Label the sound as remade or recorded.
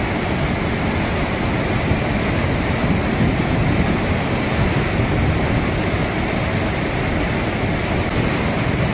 recorded